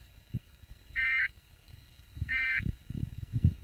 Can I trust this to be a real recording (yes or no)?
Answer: no